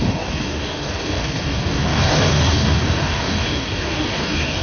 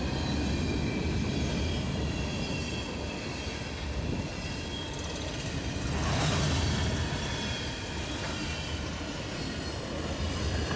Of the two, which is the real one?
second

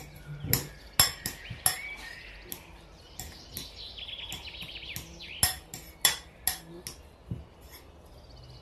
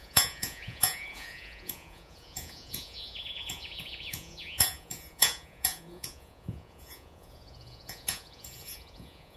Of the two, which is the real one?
first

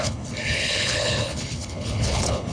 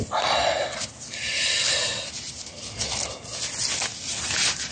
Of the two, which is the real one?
second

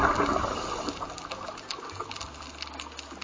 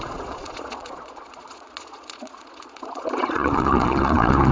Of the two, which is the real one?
first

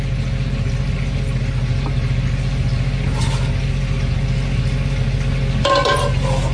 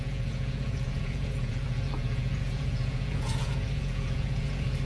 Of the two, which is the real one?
first